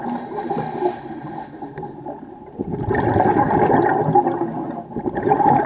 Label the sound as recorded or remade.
recorded